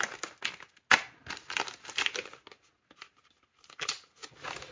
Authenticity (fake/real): real